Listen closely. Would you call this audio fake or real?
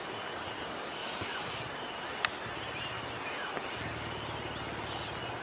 real